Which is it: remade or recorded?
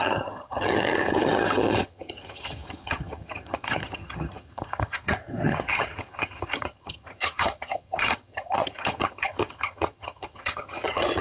remade